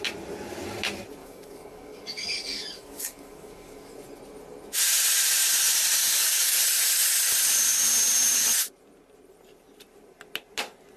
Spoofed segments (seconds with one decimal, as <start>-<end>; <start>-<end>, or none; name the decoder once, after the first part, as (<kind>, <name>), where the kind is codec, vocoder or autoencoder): 1.2-3.9 (codec, DAC); 6.0-6.6